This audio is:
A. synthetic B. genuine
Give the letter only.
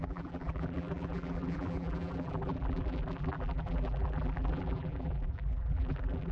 A